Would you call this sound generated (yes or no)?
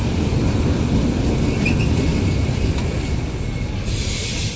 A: no